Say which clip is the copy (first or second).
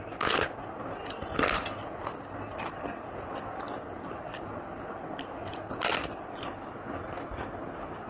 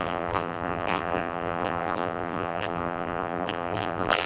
second